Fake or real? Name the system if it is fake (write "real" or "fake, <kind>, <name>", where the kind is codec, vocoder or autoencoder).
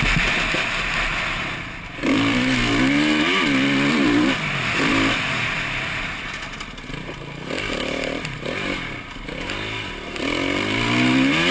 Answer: real